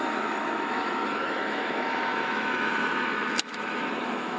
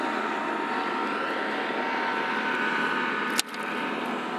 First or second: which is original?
second